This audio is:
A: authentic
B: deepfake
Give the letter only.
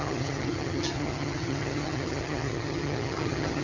B